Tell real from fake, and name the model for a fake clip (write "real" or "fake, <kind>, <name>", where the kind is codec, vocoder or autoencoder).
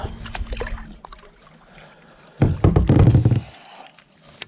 real